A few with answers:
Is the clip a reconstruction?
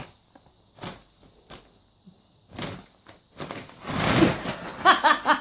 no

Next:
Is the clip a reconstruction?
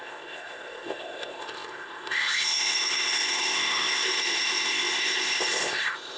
yes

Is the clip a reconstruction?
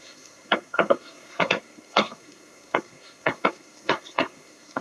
yes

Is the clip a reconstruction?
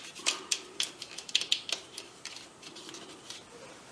no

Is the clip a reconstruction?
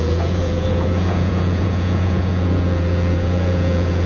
yes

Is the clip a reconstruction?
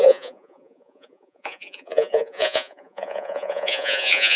yes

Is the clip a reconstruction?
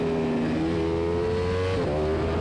no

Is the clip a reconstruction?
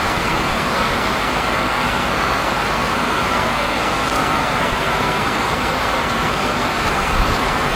yes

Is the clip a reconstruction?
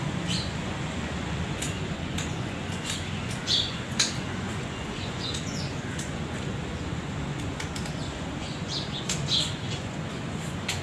yes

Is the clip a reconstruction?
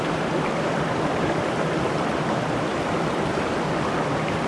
no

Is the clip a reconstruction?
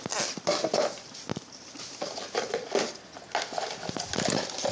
no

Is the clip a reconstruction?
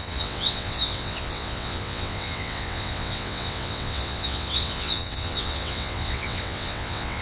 yes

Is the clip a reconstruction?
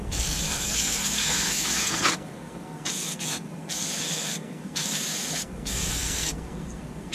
yes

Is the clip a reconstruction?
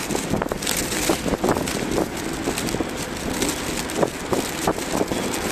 no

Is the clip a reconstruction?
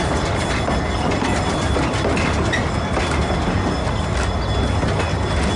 no